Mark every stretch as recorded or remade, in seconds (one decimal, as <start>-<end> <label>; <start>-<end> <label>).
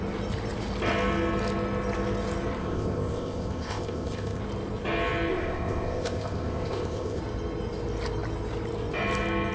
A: 0.0-2.6 recorded; 2.6-4.4 remade; 4.4-5.3 recorded; 5.3-7.2 remade; 7.2-9.5 recorded